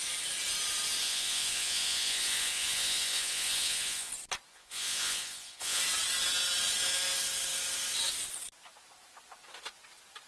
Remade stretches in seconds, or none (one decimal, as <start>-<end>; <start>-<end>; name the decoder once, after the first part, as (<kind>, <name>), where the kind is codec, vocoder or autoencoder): 1.0-4.1 (vocoder, Vocos); 4.5-5.8